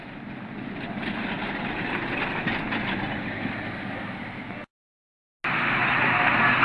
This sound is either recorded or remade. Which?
recorded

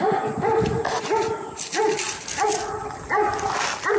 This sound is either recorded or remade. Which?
recorded